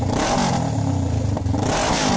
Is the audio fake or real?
real